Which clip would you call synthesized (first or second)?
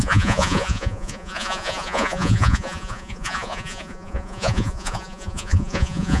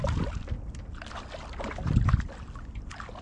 first